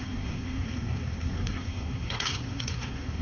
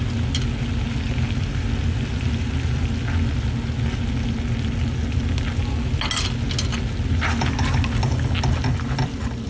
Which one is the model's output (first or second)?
first